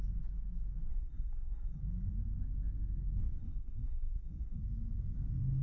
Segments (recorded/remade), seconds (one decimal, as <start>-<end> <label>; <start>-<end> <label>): 0.0-0.9 recorded; 0.9-1.8 remade; 1.8-3.4 recorded; 3.4-4.6 remade; 4.6-5.6 recorded